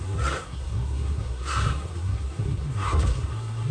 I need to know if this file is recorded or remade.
remade